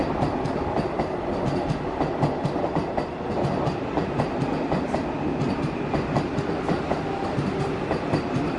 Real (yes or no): yes